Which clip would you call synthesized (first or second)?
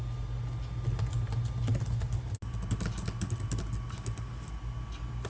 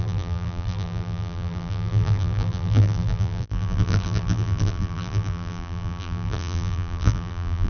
second